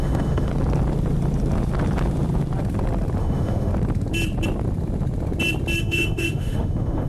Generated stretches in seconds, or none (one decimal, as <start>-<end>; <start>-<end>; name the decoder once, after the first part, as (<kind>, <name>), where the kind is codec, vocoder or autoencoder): 0.0-0.5 (autoencoder, DAC-VAE); 3.2-3.7; 5.8-7.1